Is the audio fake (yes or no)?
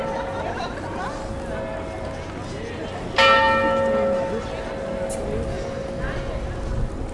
no